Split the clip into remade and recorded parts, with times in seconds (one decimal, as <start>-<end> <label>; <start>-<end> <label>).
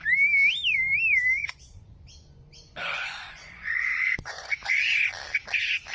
0.0-1.4 recorded; 1.4-4.9 remade; 4.9-5.9 recorded